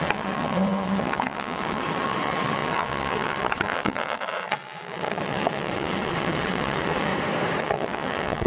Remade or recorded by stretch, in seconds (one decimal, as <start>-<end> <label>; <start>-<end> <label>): 0.0-7.1 remade; 7.1-7.6 recorded; 7.6-8.5 remade